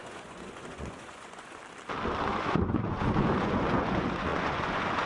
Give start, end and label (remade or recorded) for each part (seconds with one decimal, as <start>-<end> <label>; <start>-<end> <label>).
0.0-1.6 remade; 1.6-2.3 recorded; 2.3-5.1 remade

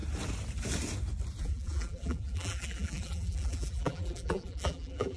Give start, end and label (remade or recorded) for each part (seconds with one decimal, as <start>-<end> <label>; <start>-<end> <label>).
0.0-1.4 recorded; 1.4-5.2 remade